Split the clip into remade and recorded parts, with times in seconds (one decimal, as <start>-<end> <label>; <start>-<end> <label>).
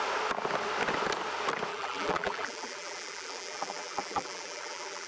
0.0-1.7 recorded; 1.7-5.1 remade